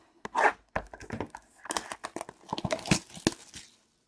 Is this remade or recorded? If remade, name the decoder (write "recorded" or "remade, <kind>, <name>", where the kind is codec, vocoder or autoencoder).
recorded